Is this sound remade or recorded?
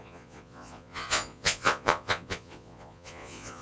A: remade